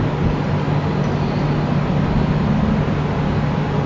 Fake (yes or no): no